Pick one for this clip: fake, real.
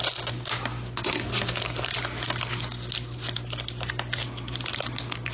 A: real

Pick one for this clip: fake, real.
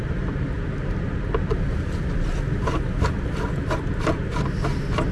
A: fake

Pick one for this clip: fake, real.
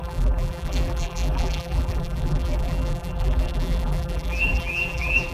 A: fake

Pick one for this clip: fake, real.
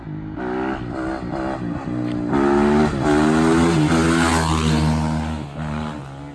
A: real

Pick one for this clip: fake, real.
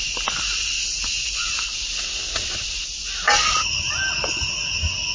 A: real